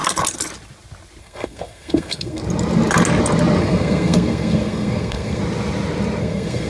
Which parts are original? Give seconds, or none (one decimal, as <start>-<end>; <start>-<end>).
0.0-1.2; 2.4-3.6; 5.4-6.2